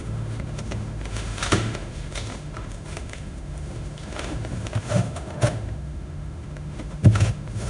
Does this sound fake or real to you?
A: fake